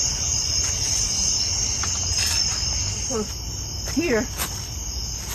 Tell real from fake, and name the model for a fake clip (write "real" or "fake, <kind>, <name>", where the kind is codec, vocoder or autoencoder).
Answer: real